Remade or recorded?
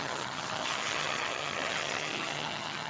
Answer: remade